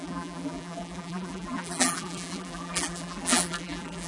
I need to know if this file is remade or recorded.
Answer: remade